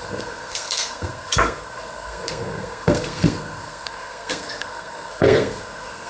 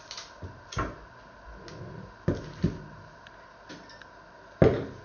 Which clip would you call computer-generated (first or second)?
first